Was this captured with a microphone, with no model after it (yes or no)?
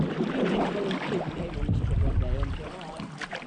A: yes